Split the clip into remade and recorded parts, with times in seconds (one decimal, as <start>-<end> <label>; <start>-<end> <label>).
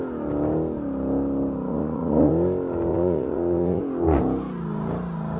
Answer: 0.0-1.7 recorded; 1.7-2.3 remade; 2.3-2.9 recorded; 2.9-3.8 remade; 3.8-5.4 recorded